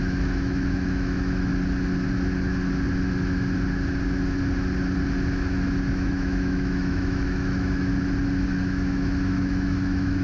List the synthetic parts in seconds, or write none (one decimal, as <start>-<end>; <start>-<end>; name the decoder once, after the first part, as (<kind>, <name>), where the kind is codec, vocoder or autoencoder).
0.0-1.5 (autoencoder, DAC-VAE); 5.9-7.9; 8.5-10.2